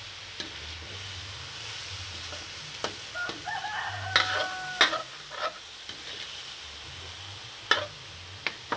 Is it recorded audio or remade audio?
recorded